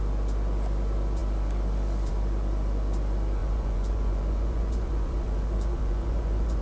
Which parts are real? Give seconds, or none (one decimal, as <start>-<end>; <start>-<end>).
0.0-3.4